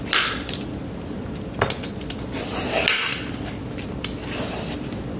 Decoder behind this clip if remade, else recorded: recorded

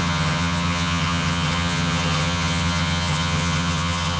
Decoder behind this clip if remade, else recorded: remade, vocoder, HiFi-GAN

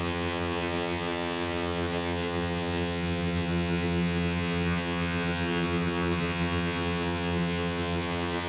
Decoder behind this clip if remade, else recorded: remade, vocoder, HiFi-GAN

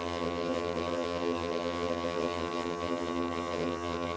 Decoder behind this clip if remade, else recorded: remade, vocoder, HiFi-GAN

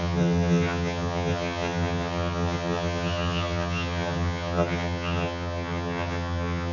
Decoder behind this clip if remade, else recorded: remade, vocoder, HiFi-GAN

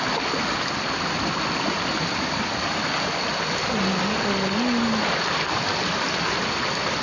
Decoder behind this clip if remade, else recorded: recorded